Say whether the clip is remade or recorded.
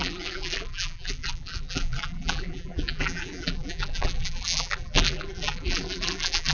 remade